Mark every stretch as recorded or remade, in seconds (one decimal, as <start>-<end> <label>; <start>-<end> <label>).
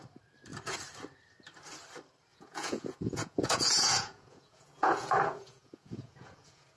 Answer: 0.0-2.3 recorded; 2.3-6.8 remade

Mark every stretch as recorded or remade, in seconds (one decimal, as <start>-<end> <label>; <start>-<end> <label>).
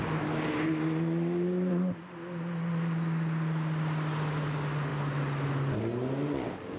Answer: 0.0-6.8 recorded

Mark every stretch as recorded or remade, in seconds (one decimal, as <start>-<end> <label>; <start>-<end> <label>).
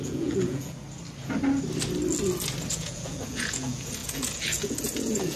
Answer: 0.0-0.8 remade; 0.8-2.7 recorded; 2.7-5.4 remade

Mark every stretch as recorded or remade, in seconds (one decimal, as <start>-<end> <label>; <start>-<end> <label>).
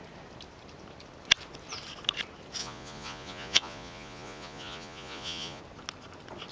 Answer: 0.0-2.6 recorded; 2.6-5.6 remade; 5.6-6.5 recorded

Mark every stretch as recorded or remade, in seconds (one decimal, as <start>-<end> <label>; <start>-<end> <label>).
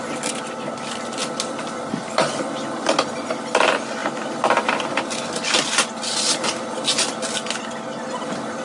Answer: 0.0-8.6 recorded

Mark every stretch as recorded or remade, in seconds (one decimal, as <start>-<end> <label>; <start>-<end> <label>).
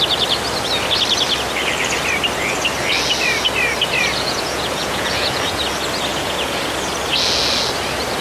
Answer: 0.0-4.0 recorded; 4.0-5.6 remade; 5.6-6.1 recorded; 6.1-6.6 remade; 6.6-8.2 recorded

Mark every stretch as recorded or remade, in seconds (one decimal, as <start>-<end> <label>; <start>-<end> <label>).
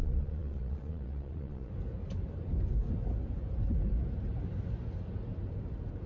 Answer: 0.0-1.7 remade; 1.7-6.1 recorded